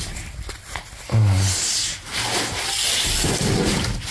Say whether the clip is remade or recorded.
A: recorded